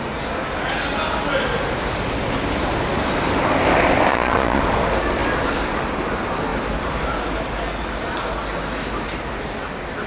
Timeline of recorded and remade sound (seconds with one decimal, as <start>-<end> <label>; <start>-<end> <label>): 0.0-4.1 recorded; 4.1-4.6 remade; 4.6-10.1 recorded